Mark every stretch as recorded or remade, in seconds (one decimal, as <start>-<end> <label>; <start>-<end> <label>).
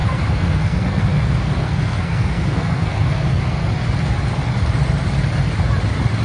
0.0-3.7 remade; 3.7-6.2 recorded